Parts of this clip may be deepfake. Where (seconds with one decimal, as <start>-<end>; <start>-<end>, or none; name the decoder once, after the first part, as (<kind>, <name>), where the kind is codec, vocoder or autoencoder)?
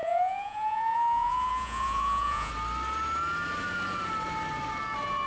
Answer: 0.0-2.5 (vocoder, Vocos)